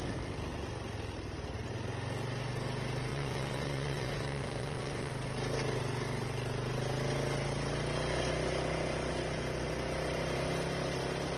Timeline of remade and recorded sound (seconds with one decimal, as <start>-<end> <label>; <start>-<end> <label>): 0.0-3.1 recorded; 3.1-5.1 remade; 5.1-11.4 recorded